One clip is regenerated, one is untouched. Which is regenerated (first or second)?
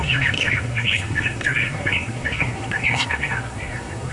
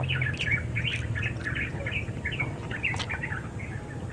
first